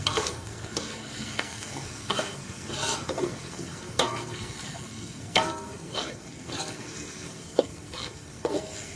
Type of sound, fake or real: fake